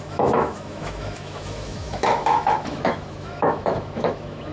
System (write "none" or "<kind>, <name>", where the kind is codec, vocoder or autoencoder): autoencoder, DAC-VAE